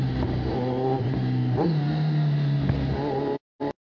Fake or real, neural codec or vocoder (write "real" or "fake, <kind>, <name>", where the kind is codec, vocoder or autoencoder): real